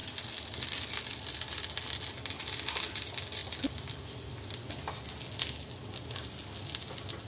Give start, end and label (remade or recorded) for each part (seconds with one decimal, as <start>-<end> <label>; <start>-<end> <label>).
0.0-1.0 remade; 1.0-3.4 recorded; 3.4-4.3 remade; 4.3-7.3 recorded